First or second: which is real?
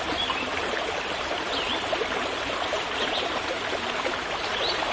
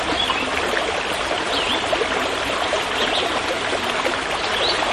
second